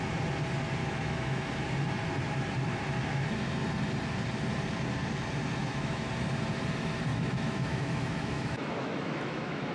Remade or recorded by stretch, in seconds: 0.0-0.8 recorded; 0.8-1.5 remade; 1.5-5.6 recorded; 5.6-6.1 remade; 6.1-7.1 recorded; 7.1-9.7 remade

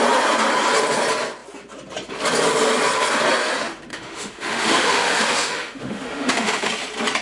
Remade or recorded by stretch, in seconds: 0.0-3.9 recorded; 3.9-6.7 remade; 6.7-7.2 recorded

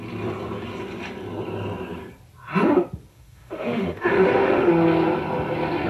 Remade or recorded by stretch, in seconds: 0.0-3.1 recorded; 3.1-4.7 remade; 4.7-5.9 recorded

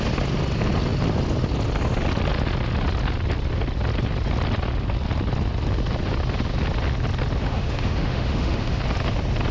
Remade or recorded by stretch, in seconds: 0.0-7.4 recorded; 7.4-8.8 remade; 8.8-9.5 recorded

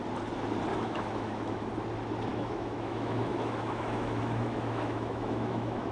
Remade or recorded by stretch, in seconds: 0.0-0.7 recorded; 0.7-1.7 remade; 1.7-2.3 recorded; 2.3-5.9 remade